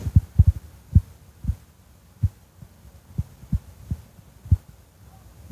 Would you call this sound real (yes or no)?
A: yes